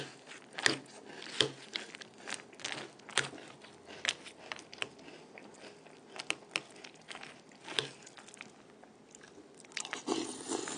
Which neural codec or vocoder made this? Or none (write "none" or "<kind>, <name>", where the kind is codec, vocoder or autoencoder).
none